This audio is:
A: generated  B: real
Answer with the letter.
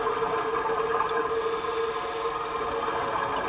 B